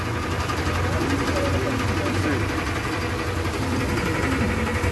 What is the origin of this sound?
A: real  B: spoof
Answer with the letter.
A